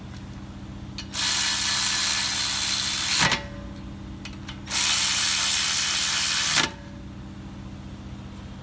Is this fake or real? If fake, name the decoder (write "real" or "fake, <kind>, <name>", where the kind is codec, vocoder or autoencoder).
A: real